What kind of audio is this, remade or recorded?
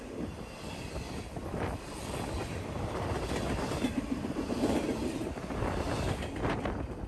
remade